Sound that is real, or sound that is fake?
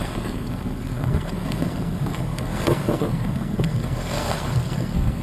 fake